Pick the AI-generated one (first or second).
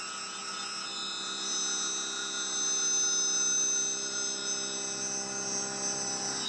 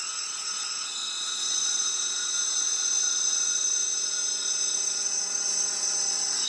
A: second